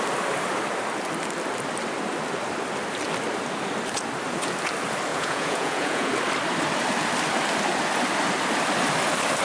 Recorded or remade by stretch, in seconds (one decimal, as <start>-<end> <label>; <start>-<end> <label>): 0.0-5.1 recorded; 5.1-6.1 remade; 6.1-9.4 recorded